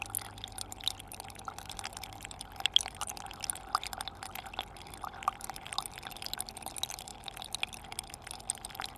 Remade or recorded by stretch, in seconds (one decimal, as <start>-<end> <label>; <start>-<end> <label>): 0.0-9.0 recorded